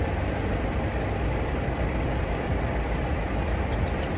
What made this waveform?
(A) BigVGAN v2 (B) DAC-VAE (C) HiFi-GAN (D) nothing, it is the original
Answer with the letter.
D